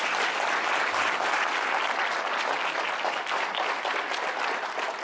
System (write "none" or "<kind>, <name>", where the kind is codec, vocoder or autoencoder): none